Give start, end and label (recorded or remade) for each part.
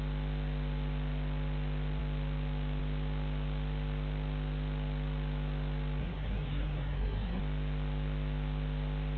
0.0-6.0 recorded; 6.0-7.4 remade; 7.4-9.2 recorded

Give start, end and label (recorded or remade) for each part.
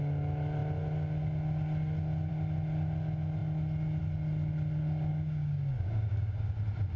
0.0-5.1 recorded; 5.1-6.5 remade; 6.5-7.0 recorded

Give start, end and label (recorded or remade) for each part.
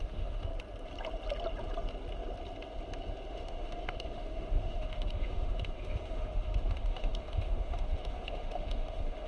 0.0-0.5 remade; 0.5-3.3 recorded; 3.3-9.3 remade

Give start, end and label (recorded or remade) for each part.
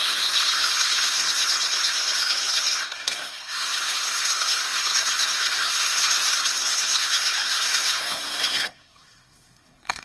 0.0-10.0 remade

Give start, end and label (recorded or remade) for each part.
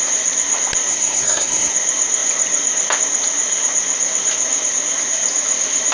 0.0-0.9 recorded; 0.9-1.7 remade; 1.7-5.9 recorded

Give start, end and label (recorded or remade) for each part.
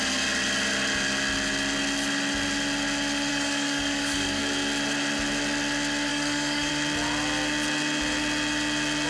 0.0-3.3 recorded; 3.3-4.4 remade; 4.4-6.1 recorded; 6.1-6.7 remade; 6.7-9.1 recorded